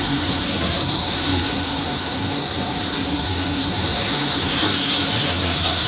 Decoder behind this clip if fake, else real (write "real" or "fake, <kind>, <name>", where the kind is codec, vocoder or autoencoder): fake, codec, SNAC